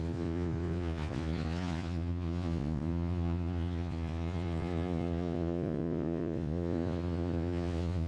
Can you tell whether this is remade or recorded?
remade